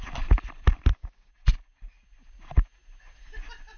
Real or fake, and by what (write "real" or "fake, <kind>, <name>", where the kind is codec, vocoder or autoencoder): real